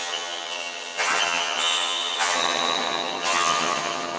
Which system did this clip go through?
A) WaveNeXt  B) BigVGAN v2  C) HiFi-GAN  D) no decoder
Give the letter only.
C